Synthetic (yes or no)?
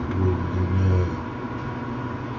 no